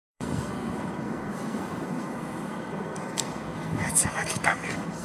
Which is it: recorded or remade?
remade